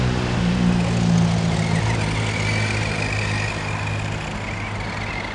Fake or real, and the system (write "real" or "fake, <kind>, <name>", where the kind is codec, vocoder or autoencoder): real